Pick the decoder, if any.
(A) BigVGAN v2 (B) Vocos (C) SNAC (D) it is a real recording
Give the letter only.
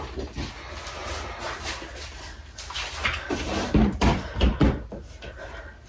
D